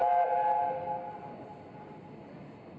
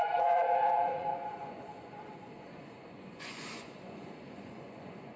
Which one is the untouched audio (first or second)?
first